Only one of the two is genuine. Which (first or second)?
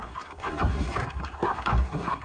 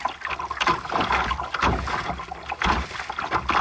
second